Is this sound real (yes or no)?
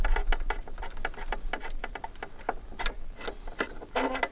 yes